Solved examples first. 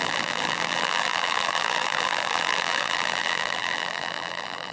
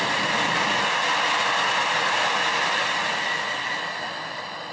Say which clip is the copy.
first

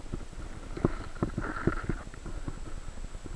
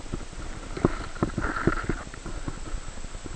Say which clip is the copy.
second